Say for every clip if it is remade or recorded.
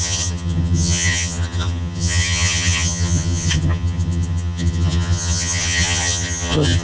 remade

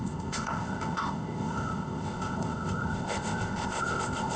remade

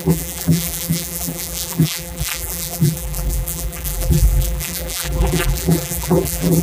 remade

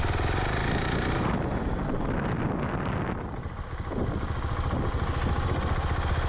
recorded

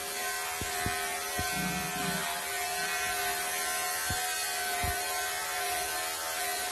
recorded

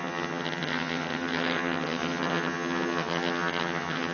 remade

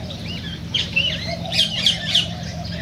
remade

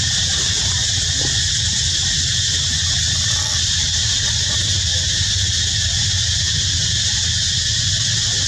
recorded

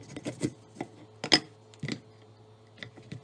recorded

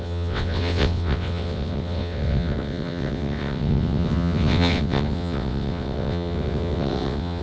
remade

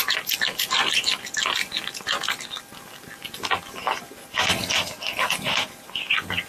recorded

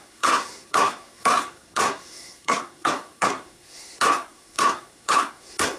remade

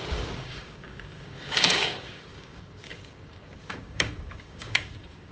remade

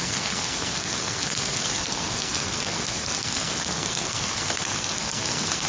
remade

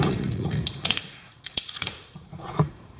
remade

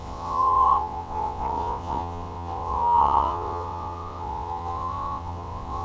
remade